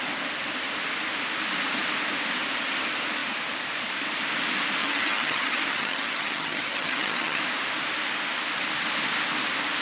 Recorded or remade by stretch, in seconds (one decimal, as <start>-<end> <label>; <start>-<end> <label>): 0.0-4.8 recorded; 4.8-7.4 remade; 7.4-9.8 recorded